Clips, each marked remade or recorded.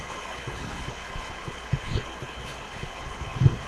remade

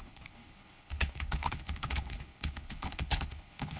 remade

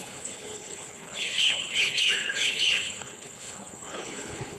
remade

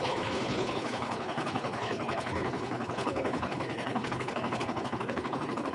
remade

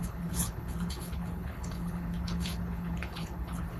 remade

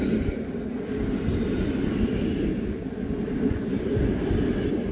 recorded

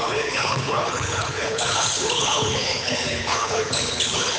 remade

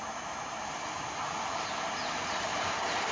recorded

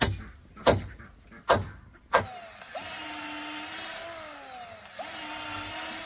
recorded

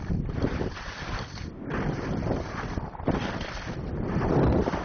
recorded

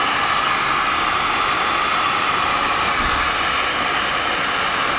recorded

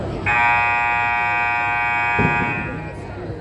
recorded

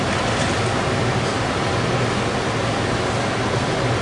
recorded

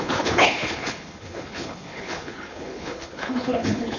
remade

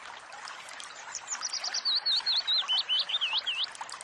recorded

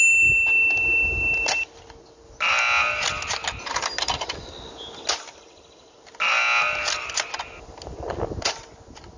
recorded